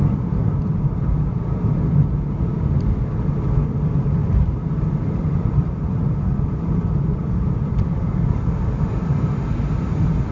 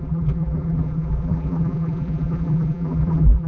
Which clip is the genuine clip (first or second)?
first